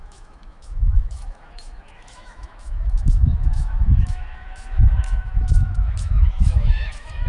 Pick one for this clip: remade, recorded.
remade